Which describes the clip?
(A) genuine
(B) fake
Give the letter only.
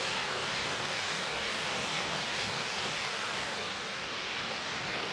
B